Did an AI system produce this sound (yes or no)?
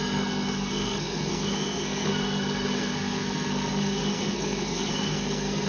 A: yes